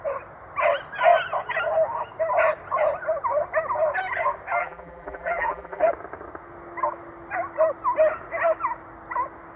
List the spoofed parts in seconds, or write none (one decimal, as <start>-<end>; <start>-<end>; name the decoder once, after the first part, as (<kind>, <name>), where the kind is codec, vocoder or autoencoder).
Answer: 4.6-5.9 (vocoder, BigVGAN v2)